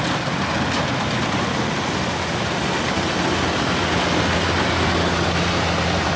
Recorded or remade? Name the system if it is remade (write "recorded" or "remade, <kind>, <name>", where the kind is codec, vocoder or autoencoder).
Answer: recorded